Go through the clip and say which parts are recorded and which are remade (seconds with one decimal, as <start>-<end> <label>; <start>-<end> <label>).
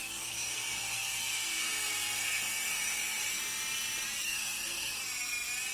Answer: 0.0-3.4 remade; 3.4-4.2 recorded; 4.2-5.0 remade; 5.0-5.7 recorded